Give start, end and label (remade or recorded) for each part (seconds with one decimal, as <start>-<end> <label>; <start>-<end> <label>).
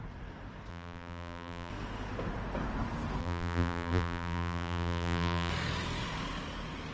0.0-0.7 recorded; 0.7-1.7 remade; 1.7-3.2 recorded; 3.2-5.5 remade; 5.5-6.9 recorded